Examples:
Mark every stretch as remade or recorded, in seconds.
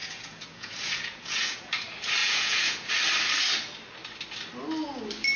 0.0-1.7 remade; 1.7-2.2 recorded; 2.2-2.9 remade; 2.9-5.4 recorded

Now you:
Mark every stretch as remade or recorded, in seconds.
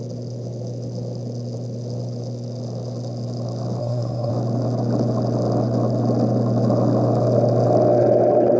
0.0-3.8 recorded; 3.8-4.3 remade; 4.3-8.6 recorded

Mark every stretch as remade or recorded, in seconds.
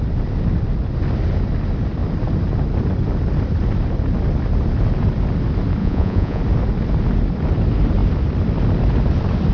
0.0-5.8 recorded; 5.8-6.4 remade; 6.4-9.5 recorded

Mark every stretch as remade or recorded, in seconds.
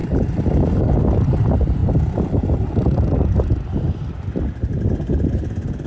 0.0-0.8 remade; 0.8-1.8 recorded; 1.8-5.3 remade; 5.3-5.9 recorded